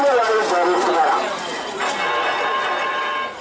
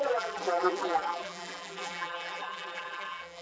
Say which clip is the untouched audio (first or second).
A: first